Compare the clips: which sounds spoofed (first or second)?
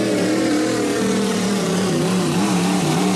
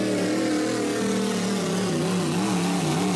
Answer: first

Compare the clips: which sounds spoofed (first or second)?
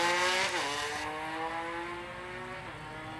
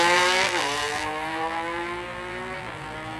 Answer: second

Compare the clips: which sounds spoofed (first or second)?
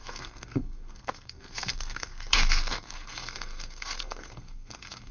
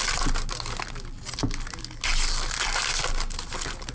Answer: first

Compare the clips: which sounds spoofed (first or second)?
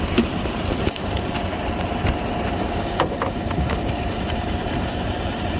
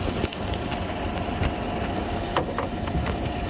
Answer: first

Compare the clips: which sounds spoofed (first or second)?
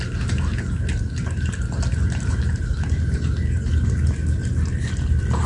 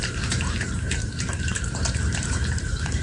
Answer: second